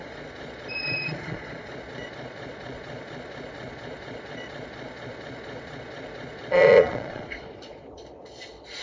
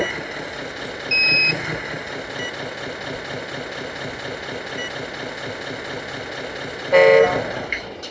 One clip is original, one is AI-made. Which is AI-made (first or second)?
first